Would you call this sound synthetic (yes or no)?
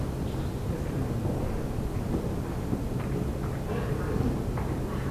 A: no